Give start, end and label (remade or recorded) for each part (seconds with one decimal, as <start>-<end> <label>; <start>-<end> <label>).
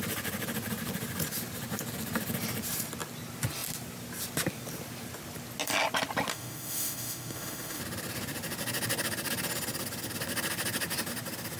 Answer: 0.0-6.3 recorded; 6.3-7.8 remade; 7.8-11.6 recorded